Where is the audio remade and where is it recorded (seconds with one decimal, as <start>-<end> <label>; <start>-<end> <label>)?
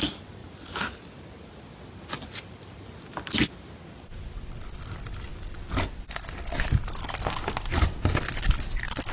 0.0-9.1 recorded